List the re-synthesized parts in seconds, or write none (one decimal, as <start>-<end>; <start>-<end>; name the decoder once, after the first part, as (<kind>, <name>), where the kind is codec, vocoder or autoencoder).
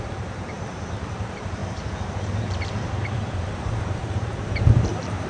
0.0-5.3 (vocoder, BigVGAN v2)